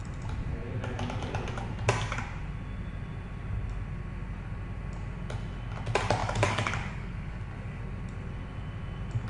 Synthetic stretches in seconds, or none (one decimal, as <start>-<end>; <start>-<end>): 6.2-7.8